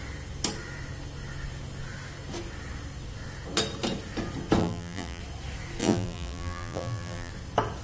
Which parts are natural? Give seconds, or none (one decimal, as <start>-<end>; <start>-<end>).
0.0-4.6; 5.2-5.8; 7.3-7.8